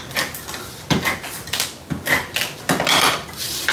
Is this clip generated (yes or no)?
no